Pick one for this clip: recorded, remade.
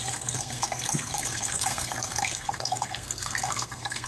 remade